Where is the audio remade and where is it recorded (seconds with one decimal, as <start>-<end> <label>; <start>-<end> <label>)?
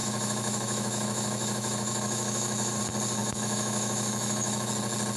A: 0.0-2.8 remade; 2.8-3.2 recorded; 3.2-4.7 remade; 4.7-5.2 recorded